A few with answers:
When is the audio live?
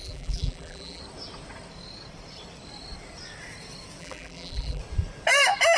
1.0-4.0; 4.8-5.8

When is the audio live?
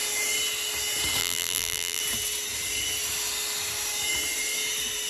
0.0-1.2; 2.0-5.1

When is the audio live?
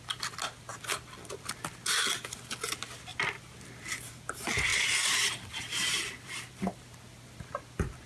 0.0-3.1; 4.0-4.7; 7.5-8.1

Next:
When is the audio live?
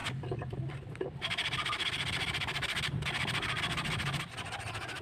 0.0-5.0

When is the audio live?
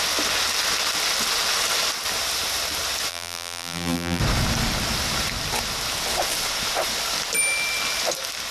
0.0-3.1; 4.2-8.5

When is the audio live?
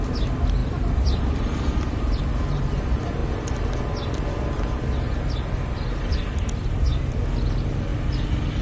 0.0-0.6; 2.2-8.6